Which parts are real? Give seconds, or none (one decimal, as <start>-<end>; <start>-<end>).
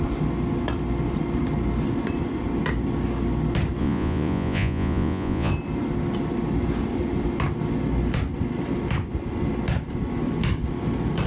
0.0-3.8; 5.5-11.3